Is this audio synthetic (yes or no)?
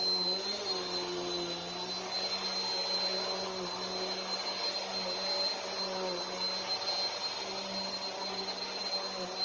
no